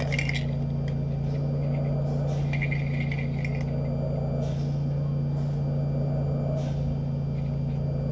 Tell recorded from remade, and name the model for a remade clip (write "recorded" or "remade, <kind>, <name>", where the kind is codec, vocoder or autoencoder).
recorded